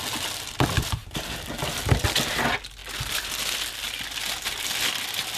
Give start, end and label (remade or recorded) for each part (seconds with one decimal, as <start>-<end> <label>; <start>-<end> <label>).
0.0-5.4 recorded